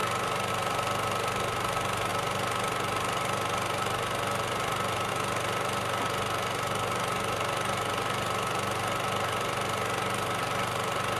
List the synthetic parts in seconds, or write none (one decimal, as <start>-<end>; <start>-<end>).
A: none